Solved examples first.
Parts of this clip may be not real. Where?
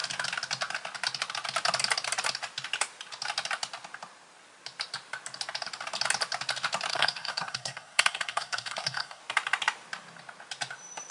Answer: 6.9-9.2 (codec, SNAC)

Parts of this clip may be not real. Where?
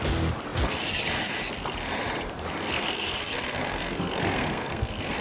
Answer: 2.7-5.2 (codec, SNAC)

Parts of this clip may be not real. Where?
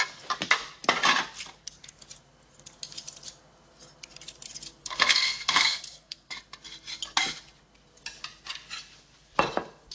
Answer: 4.8-6.3 (codec, SNAC)